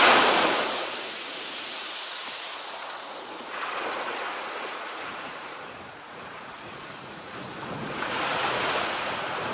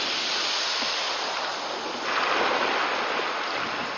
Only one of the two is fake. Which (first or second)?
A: first